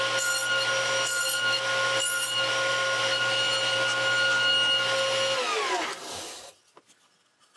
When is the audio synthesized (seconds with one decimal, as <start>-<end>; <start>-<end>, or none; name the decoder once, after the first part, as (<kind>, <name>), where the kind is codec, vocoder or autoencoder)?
none